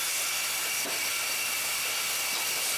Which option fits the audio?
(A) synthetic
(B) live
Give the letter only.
B